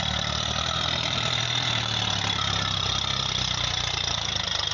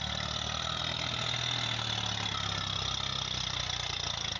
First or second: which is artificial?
first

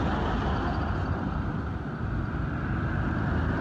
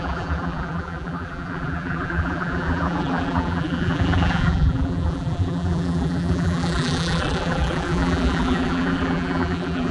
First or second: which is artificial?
second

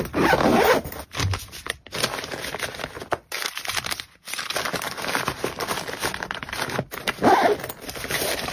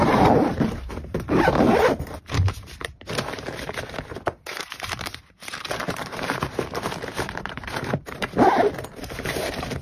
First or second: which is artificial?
second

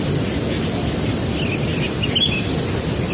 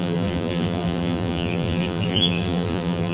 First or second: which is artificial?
second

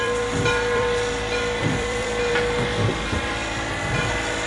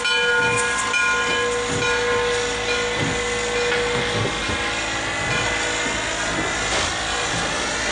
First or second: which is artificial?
first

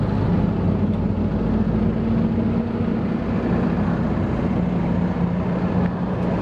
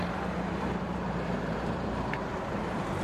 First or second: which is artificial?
second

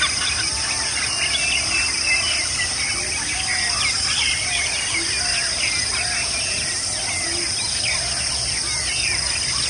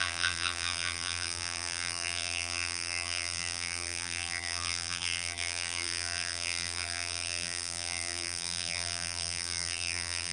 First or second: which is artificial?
second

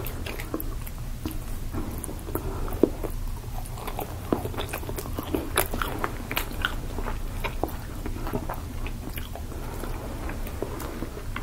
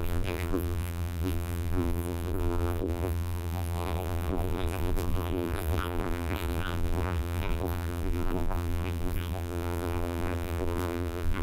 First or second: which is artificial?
second